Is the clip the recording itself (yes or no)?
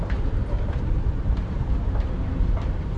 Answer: no